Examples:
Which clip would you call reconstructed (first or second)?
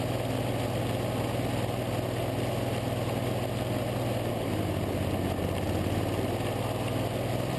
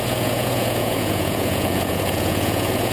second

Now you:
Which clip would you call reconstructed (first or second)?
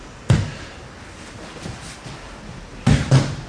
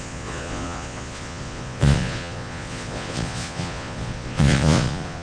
second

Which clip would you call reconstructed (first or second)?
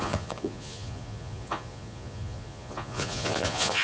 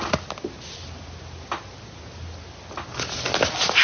first